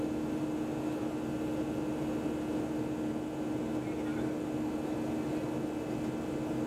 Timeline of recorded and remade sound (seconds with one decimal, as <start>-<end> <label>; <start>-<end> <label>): 0.0-6.7 recorded

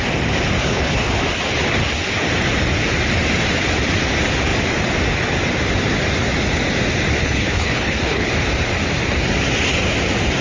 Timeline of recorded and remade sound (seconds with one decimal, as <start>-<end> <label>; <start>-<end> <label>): 0.0-0.6 recorded; 0.6-1.2 remade; 1.2-7.2 recorded; 7.2-8.3 remade; 8.3-10.4 recorded

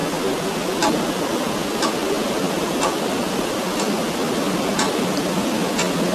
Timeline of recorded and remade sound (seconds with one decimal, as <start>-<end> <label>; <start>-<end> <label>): 0.0-6.1 recorded